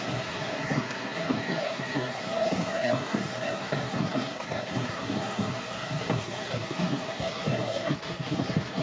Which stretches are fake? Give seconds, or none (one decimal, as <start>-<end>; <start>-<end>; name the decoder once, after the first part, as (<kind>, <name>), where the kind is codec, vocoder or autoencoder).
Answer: 0.0-8.8 (codec, SNAC)